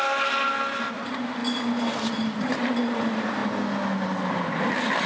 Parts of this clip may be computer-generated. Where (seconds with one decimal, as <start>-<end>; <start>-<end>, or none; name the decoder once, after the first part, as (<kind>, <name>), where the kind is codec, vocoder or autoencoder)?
none